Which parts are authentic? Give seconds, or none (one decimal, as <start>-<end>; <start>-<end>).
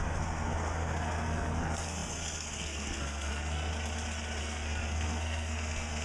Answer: 3.7-4.4